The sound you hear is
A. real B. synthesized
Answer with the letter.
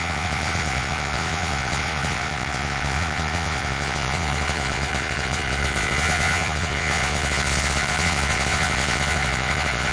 B